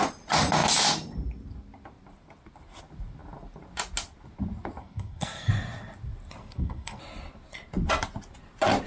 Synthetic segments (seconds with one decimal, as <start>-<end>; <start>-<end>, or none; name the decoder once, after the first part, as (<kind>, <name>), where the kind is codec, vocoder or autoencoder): 4.8-5.5 (codec, SNAC); 6.4-7.0